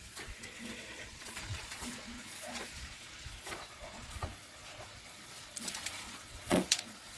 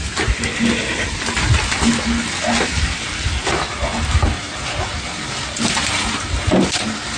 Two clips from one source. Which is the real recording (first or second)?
second